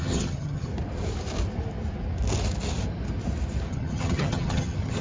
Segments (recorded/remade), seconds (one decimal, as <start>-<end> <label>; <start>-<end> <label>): 0.0-0.7 remade; 0.7-3.7 recorded; 3.7-5.0 remade